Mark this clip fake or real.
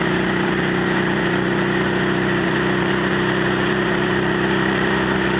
fake